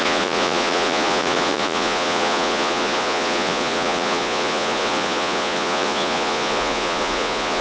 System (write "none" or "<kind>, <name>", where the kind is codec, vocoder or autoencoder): vocoder, Vocos